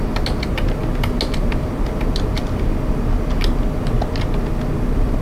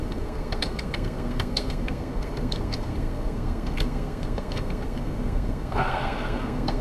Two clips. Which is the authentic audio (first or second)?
first